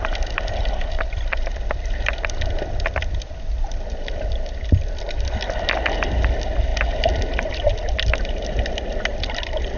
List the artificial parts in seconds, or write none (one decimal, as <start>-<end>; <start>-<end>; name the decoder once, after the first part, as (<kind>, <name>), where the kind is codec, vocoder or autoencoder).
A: none